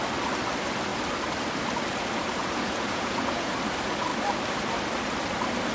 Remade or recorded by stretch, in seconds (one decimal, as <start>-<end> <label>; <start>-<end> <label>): 0.0-2.4 recorded; 2.4-3.5 remade; 3.5-5.7 recorded